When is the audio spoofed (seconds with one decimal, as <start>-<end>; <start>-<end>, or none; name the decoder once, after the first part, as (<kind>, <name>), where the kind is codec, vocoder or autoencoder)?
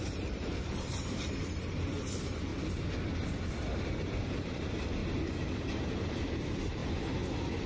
0.0-2.5 (vocoder, BigVGAN v2); 3.6-5.0; 5.6-7.7